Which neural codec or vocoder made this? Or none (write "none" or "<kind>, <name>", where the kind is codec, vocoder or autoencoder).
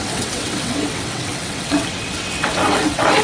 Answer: vocoder, WaveNeXt